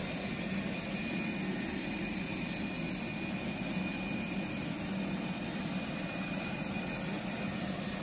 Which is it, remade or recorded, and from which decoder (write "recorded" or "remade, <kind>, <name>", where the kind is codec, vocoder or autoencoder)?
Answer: recorded